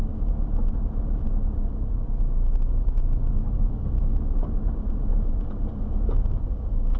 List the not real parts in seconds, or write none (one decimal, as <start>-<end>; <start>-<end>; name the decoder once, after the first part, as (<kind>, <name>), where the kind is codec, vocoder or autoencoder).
5.1-5.8 (vocoder, BigVGAN v2)